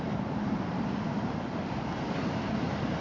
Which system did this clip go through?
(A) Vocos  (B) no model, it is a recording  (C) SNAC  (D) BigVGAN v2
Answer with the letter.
D